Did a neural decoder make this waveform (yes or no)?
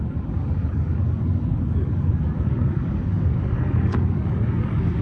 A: yes